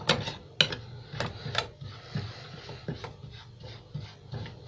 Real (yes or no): yes